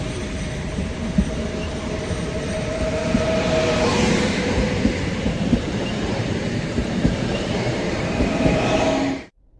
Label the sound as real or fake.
fake